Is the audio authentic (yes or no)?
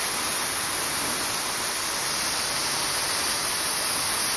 yes